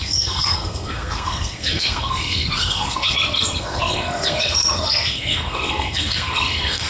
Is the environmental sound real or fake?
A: fake